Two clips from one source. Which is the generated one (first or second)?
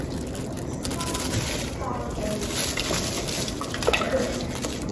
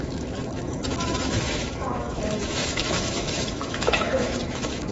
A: second